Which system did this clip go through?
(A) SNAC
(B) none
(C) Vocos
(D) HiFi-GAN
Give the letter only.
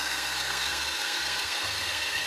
A